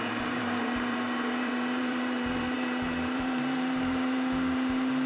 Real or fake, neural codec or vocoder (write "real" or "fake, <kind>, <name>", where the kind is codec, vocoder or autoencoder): fake, vocoder, BigVGAN v2